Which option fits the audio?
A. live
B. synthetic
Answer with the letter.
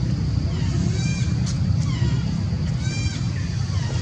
A